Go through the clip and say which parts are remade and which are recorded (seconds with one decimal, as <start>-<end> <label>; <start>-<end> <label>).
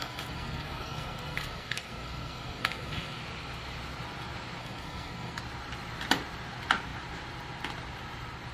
0.0-3.2 remade; 3.2-4.6 recorded; 4.6-5.4 remade; 5.4-8.5 recorded